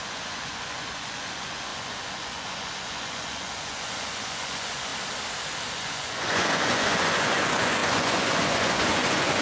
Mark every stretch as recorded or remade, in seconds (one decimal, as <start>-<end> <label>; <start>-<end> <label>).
0.0-4.9 remade; 4.9-5.7 recorded; 5.7-9.4 remade